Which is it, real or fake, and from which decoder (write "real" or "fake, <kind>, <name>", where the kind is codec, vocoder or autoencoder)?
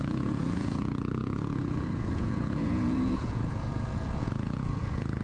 fake, vocoder, Vocos